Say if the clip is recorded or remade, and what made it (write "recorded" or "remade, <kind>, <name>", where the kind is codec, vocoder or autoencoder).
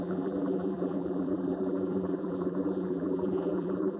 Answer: remade, vocoder, BigVGAN v2